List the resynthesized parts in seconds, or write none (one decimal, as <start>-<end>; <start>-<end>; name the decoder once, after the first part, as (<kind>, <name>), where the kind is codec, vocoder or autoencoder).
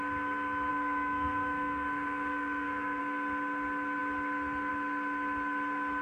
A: 0.7-3.0 (codec, SNAC)